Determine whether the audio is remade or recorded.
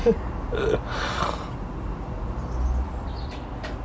recorded